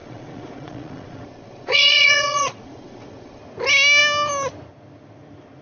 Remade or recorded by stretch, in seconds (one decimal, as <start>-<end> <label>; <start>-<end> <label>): 0.0-3.4 remade; 3.4-5.6 recorded